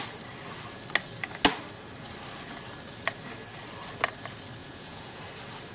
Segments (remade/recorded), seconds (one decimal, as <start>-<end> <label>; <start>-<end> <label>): 0.0-4.6 recorded; 4.6-5.2 remade; 5.2-5.7 recorded